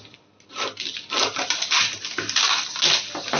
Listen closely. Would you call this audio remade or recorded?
recorded